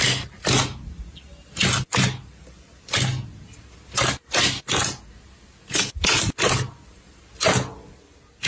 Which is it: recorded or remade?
recorded